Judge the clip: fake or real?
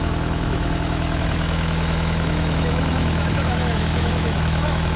fake